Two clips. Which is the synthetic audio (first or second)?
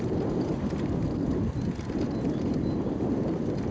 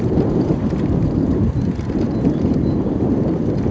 second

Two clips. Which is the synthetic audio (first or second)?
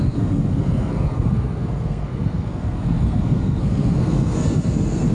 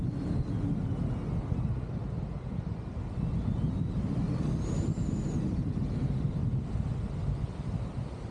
first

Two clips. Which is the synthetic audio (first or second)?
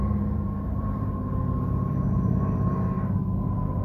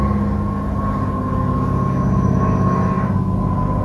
first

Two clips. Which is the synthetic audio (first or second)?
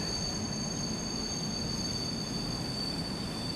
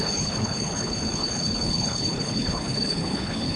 second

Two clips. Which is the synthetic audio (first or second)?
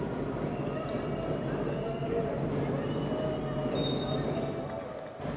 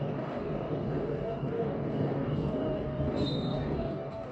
second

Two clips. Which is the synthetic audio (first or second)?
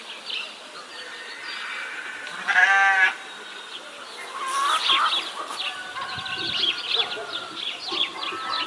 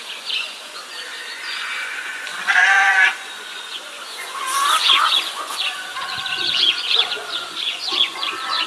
second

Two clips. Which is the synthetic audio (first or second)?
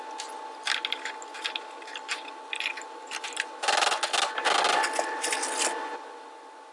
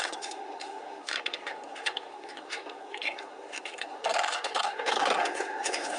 second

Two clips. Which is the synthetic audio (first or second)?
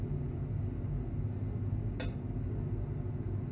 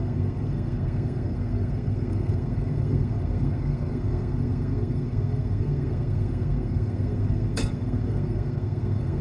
second